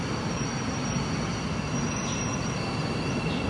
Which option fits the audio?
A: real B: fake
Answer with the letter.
A